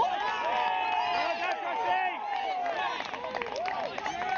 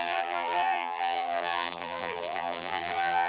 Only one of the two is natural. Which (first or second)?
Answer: first